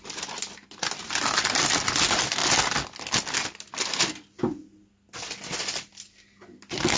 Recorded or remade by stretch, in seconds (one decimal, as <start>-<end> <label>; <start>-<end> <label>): 0.0-7.0 recorded